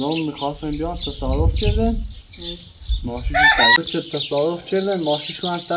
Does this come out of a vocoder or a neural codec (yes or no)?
no